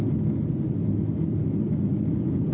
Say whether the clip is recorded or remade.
recorded